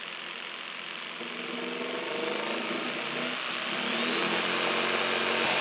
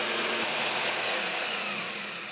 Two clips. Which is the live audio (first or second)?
first